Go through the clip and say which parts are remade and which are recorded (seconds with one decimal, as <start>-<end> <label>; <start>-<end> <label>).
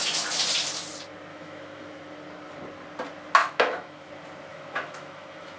0.0-1.3 recorded; 1.3-2.0 remade; 2.0-3.4 recorded; 3.4-4.1 remade; 4.1-4.5 recorded; 4.5-5.6 remade